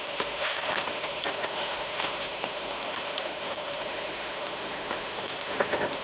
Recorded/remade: remade